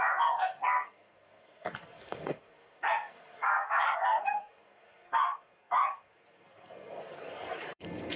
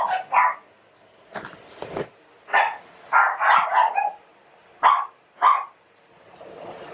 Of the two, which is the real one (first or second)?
second